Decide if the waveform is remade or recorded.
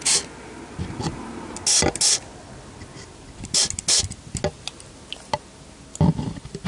recorded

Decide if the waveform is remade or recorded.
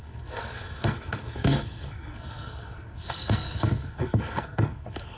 remade